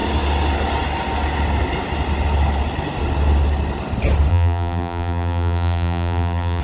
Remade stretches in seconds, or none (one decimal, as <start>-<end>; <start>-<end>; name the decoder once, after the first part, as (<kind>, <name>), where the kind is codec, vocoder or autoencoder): 4.3-6.6 (vocoder, BigVGAN v2)